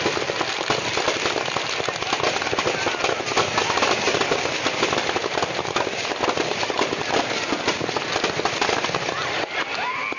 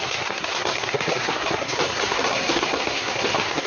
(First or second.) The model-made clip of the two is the second